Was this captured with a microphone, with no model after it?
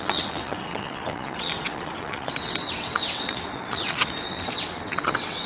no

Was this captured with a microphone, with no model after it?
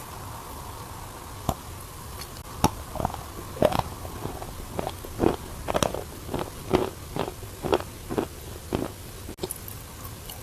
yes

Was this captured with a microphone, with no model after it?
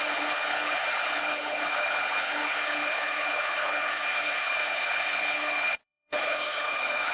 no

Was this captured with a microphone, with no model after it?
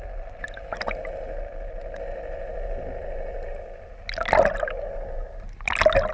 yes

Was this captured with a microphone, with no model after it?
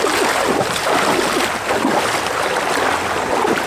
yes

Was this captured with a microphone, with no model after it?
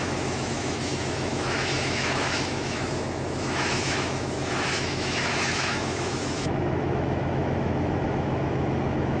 no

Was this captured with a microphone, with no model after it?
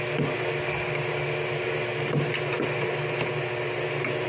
yes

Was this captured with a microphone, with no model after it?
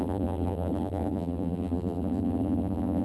no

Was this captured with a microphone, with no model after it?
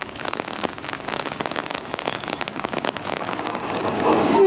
no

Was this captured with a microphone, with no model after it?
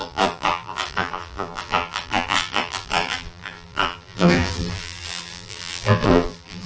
no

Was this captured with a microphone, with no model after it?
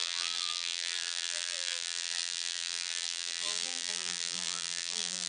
no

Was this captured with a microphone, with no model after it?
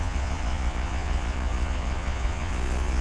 no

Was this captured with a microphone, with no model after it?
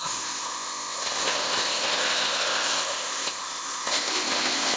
no